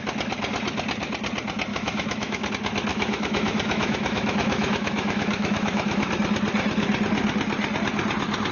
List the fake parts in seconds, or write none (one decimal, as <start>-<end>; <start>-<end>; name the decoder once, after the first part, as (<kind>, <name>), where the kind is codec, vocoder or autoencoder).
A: 1.7-2.5 (autoencoder, DAC-VAE); 2.9-6.1